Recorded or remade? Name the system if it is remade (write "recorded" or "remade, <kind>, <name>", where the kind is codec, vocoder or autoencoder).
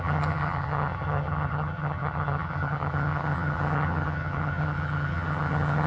remade, vocoder, HiFi-GAN